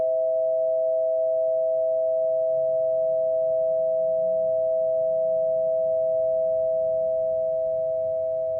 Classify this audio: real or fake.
real